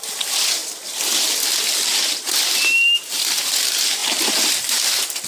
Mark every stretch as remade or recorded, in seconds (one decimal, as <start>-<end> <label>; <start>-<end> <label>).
0.0-5.3 recorded